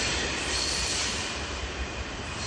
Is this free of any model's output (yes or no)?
yes